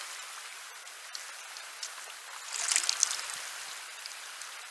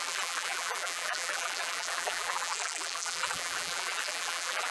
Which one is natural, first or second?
first